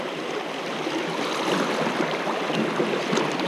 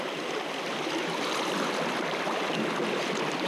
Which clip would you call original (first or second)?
first